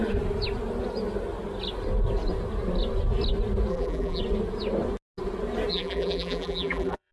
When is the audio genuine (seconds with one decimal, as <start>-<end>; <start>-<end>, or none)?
0.0-3.7; 4.2-5.7